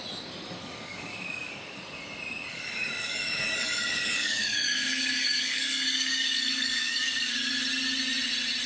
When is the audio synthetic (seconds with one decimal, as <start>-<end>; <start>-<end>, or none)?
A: 0.6-1.8; 2.5-7.5